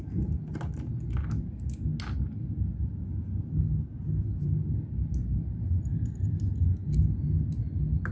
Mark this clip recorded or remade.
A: recorded